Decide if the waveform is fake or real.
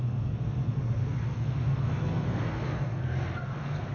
fake